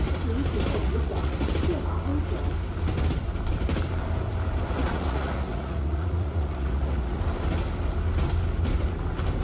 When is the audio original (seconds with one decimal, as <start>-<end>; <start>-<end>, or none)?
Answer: 0.0-0.8; 1.5-4.8; 7.2-9.4